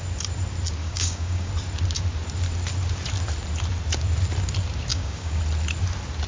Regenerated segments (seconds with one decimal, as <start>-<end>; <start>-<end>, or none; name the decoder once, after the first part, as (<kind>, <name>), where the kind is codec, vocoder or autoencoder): 0.8-1.5 (codec, DAC); 4.9-5.4